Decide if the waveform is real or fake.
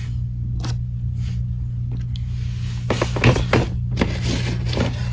real